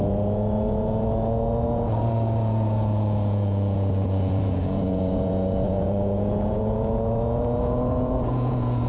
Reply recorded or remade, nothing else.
remade